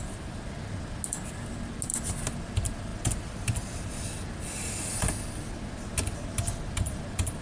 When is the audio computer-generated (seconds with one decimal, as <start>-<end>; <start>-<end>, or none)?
none